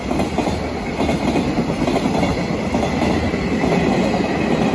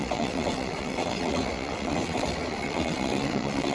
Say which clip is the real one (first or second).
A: first